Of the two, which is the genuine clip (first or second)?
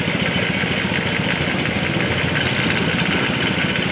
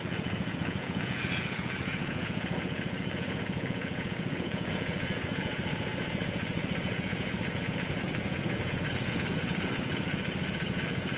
first